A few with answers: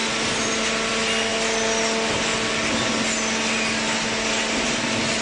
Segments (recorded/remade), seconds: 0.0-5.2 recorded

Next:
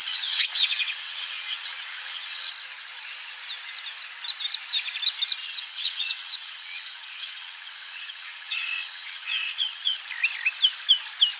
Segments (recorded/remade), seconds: 0.0-2.5 remade; 2.5-5.4 recorded; 5.4-10.0 remade; 10.0-11.4 recorded

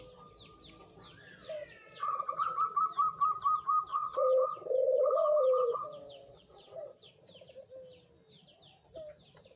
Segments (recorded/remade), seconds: 0.0-1.4 recorded; 1.4-2.6 remade; 2.6-3.9 recorded; 3.9-7.1 remade; 7.1-9.6 recorded

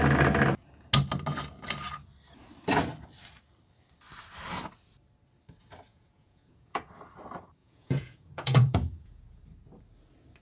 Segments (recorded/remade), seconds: 0.0-5.9 recorded; 5.9-6.9 remade; 6.9-7.6 recorded; 7.6-9.4 remade; 9.4-10.4 recorded

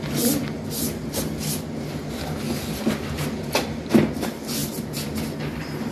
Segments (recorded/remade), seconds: 0.0-5.9 recorded

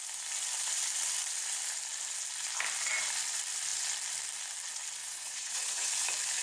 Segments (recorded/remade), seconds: 0.0-5.0 recorded; 5.0-5.9 remade; 5.9-6.4 recorded

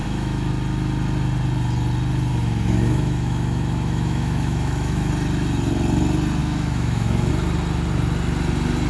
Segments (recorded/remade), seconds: 0.0-0.5 remade; 0.5-2.3 recorded; 2.3-5.1 remade; 5.1-6.4 recorded; 6.4-7.3 remade; 7.3-8.9 recorded